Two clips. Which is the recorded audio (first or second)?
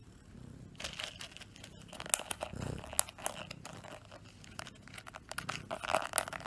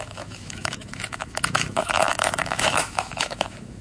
first